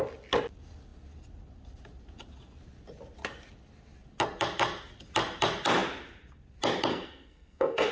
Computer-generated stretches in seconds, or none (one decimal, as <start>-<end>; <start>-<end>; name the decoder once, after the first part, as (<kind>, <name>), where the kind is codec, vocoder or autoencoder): 6.9-7.9 (codec, SNAC)